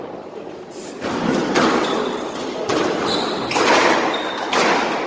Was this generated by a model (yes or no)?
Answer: no